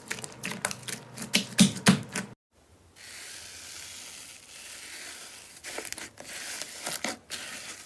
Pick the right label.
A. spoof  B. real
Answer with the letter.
B